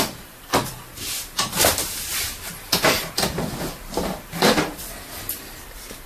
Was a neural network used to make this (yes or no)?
yes